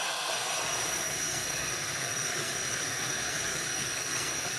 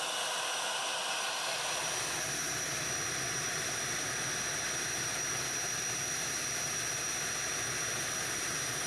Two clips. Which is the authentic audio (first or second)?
second